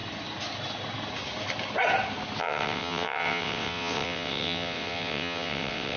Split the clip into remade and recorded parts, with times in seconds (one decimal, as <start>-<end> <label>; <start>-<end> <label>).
0.0-2.4 recorded; 2.4-6.0 remade